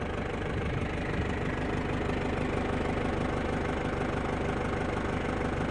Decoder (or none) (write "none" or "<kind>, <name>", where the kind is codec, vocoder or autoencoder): none